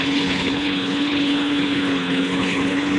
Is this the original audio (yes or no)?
no